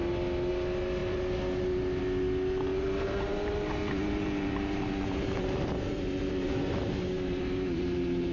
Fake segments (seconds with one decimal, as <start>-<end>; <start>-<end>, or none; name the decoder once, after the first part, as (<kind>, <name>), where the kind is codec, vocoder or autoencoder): 2.7-7.4 (vocoder, BigVGAN v2)